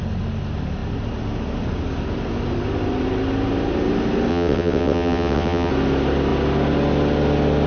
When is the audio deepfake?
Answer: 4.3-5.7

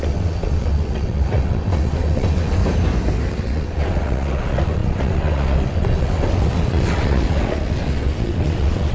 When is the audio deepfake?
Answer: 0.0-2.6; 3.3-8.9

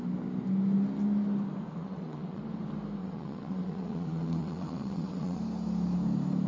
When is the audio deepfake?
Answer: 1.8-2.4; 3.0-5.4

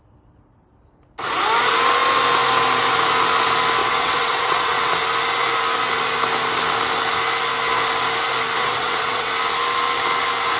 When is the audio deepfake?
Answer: 3.8-4.9; 8.6-9.3

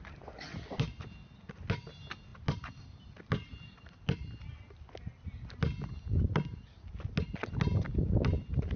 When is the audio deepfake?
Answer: none